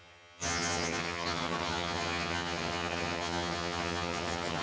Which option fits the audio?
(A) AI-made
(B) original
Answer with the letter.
A